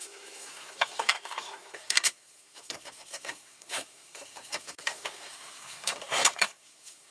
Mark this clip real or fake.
fake